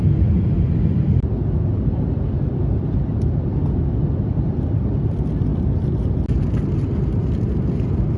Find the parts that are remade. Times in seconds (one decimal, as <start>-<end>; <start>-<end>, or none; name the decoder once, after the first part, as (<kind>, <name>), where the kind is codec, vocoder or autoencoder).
none